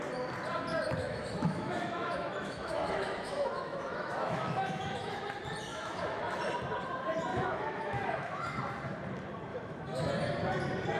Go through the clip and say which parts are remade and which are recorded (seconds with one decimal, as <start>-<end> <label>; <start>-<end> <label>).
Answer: 0.0-1.0 recorded; 1.0-5.2 remade; 5.2-5.7 recorded; 5.7-6.4 remade; 6.4-7.3 recorded; 7.3-8.6 remade; 8.6-9.5 recorded; 9.5-10.1 remade; 10.1-11.0 recorded